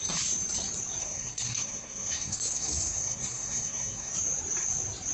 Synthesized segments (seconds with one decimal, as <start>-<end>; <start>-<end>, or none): 1.0-4.1